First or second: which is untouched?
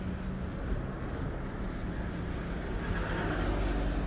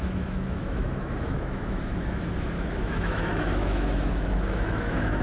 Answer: first